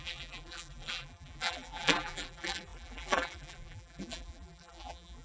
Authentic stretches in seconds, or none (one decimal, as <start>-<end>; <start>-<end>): none